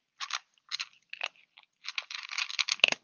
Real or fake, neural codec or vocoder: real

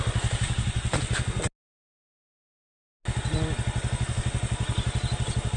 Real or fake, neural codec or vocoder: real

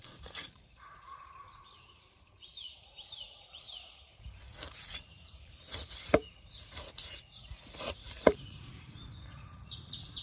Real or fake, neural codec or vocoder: fake, vocoder, Vocos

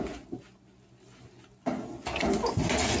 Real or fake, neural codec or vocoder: real